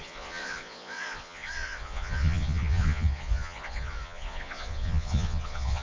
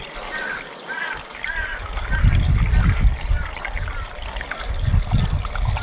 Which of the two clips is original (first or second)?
second